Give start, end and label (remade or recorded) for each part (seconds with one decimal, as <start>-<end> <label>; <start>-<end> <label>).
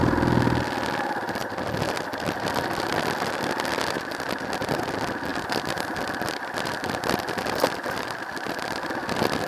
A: 0.0-5.3 recorded; 5.3-9.1 remade; 9.1-9.5 recorded